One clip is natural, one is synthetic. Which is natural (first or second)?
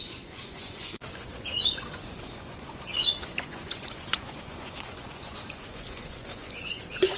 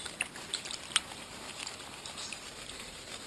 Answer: second